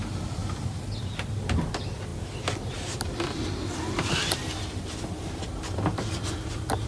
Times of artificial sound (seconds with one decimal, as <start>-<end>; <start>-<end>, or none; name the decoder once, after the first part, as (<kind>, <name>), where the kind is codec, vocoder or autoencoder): none